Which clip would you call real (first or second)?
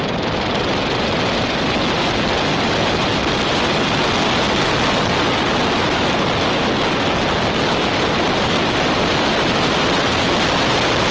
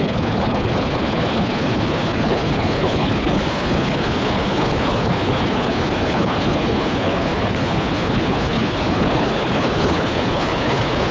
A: first